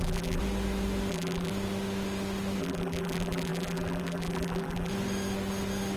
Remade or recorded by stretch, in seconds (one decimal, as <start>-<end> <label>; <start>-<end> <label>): 0.0-0.4 remade; 0.4-1.1 recorded; 1.1-1.5 remade; 1.5-2.6 recorded; 2.6-4.9 remade; 4.9-6.0 recorded